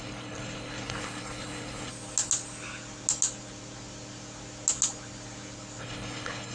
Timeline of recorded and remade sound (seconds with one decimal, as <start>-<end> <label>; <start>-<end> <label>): 0.0-1.9 remade; 1.9-5.8 recorded; 5.8-6.5 remade